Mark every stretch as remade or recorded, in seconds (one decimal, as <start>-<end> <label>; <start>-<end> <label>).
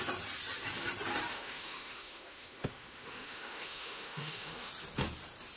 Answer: 0.0-1.3 recorded; 1.3-4.7 remade; 4.7-5.6 recorded